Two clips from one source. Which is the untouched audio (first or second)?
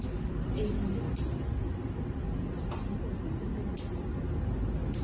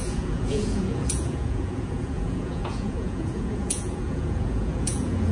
first